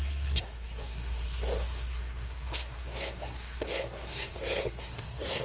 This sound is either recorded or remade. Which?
remade